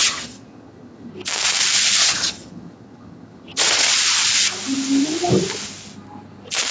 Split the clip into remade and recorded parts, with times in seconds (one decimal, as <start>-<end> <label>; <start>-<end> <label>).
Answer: 0.0-1.1 remade; 1.1-2.0 recorded; 2.0-3.9 remade; 3.9-6.7 recorded